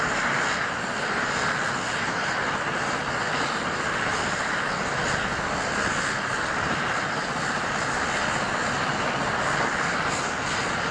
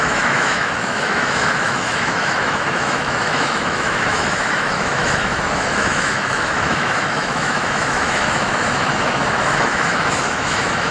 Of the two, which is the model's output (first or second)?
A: second